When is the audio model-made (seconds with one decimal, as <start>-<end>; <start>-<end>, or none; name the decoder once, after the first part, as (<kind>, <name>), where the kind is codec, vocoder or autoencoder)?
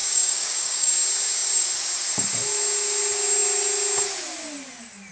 0.0-0.9 (codec, DAC)